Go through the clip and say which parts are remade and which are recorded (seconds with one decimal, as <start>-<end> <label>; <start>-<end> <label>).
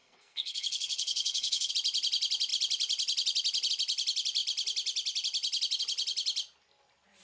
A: 0.0-1.7 remade; 1.7-7.2 recorded